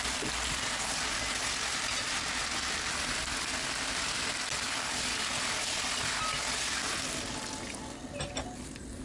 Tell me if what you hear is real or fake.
real